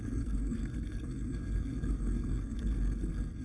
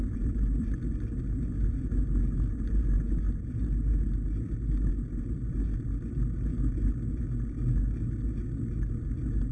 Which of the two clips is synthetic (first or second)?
first